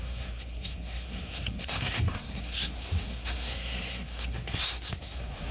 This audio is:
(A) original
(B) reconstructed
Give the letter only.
B